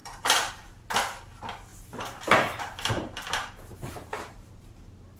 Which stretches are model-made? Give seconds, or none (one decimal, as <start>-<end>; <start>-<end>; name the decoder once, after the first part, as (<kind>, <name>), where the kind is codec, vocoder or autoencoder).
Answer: 0.0-0.7 (vocoder, BigVGAN v2); 1.7-4.8